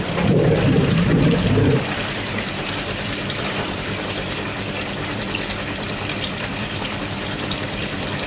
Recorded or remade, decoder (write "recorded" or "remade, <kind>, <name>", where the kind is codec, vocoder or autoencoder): remade, vocoder, BigVGAN v2